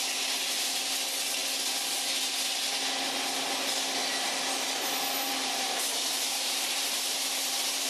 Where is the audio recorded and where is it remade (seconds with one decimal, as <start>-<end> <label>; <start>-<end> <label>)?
0.0-4.0 recorded; 4.0-7.9 remade